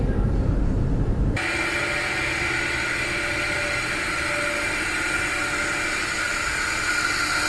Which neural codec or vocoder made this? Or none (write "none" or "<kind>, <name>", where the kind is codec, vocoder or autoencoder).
none